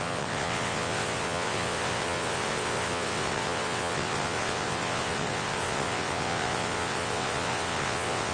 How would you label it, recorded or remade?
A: remade